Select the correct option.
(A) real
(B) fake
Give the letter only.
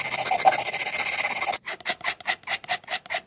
B